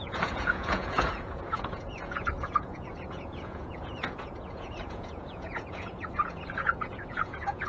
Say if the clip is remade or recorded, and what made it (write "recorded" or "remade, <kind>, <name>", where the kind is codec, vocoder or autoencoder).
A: remade, vocoder, Vocos